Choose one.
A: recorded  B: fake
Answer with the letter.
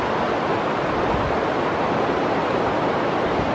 A